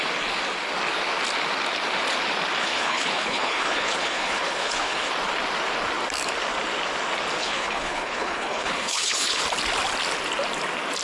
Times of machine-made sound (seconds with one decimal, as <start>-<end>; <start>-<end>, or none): 2.6-5.1; 7.4-9.4